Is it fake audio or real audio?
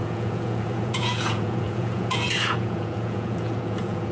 fake